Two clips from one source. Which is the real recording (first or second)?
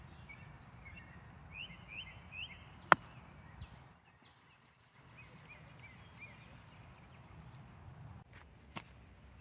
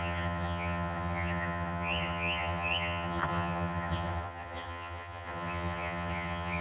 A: first